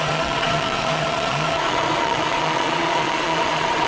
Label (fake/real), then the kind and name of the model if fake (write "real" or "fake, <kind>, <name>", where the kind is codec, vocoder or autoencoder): fake, vocoder, Vocos